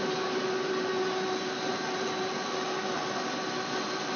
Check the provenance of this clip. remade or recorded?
recorded